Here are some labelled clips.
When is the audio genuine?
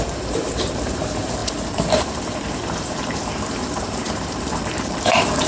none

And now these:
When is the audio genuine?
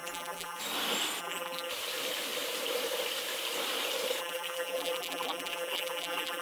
0.6-1.2; 1.7-4.2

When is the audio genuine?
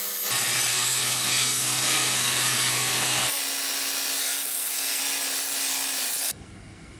0.0-0.7; 3.4-4.2; 5.0-6.2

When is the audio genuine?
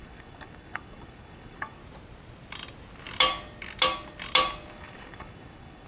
1.8-4.7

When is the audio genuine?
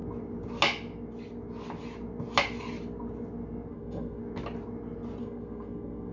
0.0-3.7; 4.2-5.2